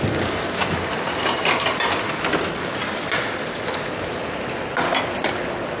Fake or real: real